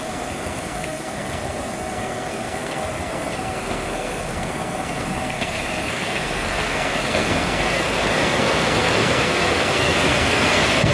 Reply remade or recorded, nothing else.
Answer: remade